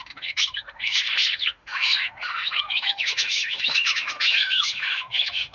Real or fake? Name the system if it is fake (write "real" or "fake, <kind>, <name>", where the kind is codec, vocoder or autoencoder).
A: fake, autoencoder, DAC-VAE